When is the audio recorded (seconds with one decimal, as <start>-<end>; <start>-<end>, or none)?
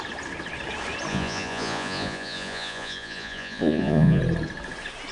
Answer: 0.0-1.1; 4.2-5.1